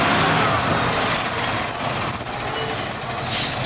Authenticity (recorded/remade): recorded